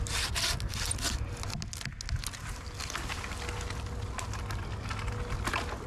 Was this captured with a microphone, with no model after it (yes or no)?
yes